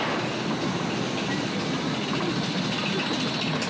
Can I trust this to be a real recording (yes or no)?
yes